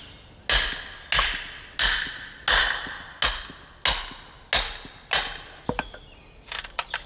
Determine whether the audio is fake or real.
real